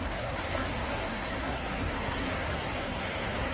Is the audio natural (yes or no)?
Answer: no